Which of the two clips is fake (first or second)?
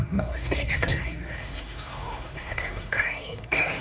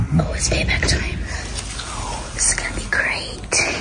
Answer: first